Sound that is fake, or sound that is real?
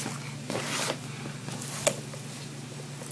real